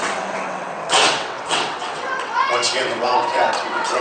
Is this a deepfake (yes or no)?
yes